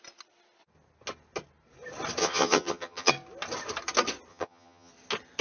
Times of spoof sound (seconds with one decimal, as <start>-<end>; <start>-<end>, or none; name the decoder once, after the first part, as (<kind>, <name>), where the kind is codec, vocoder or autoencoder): 2.2-3.1 (vocoder, HiFi-GAN); 4.3-4.9